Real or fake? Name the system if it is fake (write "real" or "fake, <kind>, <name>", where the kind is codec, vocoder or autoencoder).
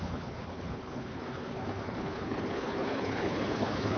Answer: fake, codec, HILCodec